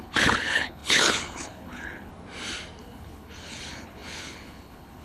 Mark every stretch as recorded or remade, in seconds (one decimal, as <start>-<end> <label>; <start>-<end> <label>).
0.0-2.1 remade; 2.1-2.8 recorded; 2.8-5.0 remade